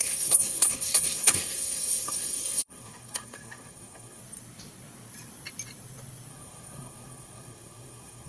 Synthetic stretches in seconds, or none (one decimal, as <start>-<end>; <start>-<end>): 0.0-4.2; 6.3-8.3